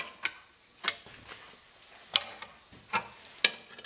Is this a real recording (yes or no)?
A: yes